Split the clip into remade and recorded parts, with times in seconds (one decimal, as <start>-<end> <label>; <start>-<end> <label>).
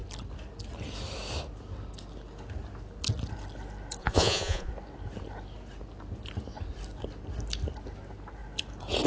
0.0-4.0 recorded; 4.0-4.7 remade; 4.7-9.1 recorded